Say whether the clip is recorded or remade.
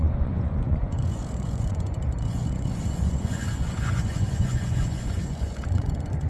remade